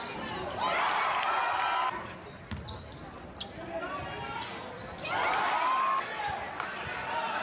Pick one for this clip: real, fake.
real